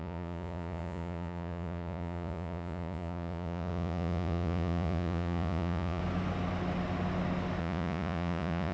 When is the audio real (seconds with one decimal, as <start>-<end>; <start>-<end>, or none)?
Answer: 6.0-7.6